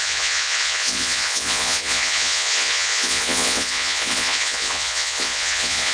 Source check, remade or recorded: remade